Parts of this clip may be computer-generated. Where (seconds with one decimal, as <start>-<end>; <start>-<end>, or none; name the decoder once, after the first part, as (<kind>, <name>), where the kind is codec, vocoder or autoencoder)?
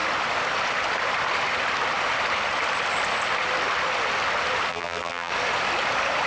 4.7-5.3 (vocoder, BigVGAN v2)